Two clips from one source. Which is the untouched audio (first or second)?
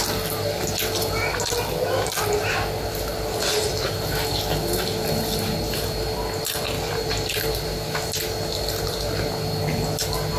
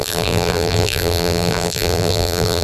first